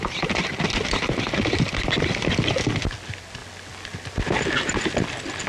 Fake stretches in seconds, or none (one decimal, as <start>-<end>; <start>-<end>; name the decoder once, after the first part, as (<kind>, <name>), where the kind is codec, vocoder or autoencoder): none